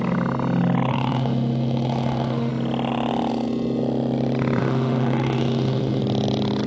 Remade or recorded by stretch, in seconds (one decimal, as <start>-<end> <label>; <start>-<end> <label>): 0.0-0.9 recorded; 0.9-2.5 remade; 2.5-4.6 recorded; 4.6-6.0 remade; 6.0-6.7 recorded